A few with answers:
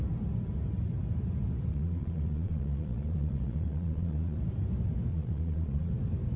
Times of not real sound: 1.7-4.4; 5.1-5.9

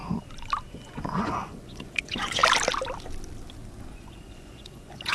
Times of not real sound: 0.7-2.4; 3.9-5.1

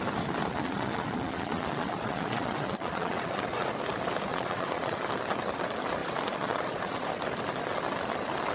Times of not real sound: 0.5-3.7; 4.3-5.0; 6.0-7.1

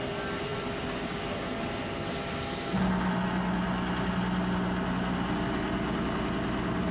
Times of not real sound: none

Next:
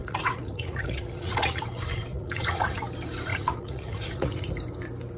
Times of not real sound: 0.0-1.6; 2.1-2.8; 3.3-4.5